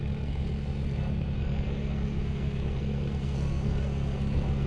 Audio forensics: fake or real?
fake